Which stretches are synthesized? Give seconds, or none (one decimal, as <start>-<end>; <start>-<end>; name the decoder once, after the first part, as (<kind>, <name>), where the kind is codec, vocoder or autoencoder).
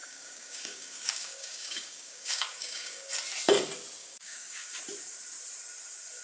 0.0-3.1 (codec, DAC); 4.0-4.8